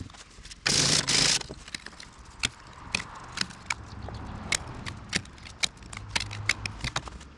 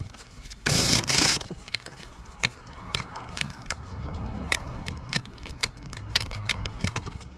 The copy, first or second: second